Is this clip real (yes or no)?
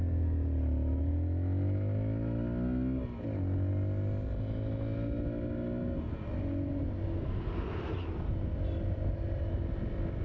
yes